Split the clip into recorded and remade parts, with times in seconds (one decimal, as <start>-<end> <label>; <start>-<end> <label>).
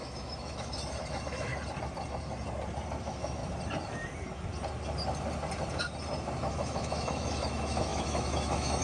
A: 0.0-1.5 remade; 1.5-3.0 recorded; 3.0-3.4 remade; 3.4-6.5 recorded; 6.5-8.8 remade